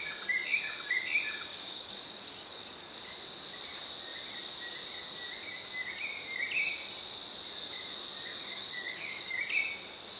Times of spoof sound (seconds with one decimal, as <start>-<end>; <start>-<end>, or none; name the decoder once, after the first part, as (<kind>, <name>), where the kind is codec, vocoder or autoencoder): 1.5-2.7 (codec, DAC); 8.3-9.3